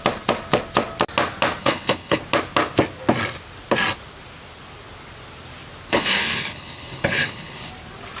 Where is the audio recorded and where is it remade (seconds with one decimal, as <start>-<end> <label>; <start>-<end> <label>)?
0.0-1.6 recorded; 1.6-2.2 remade; 2.2-5.9 recorded; 5.9-7.7 remade; 7.7-8.2 recorded